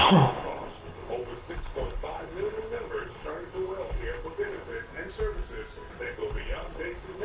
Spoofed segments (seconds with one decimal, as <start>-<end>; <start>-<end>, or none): 0.0-4.7; 6.0-7.2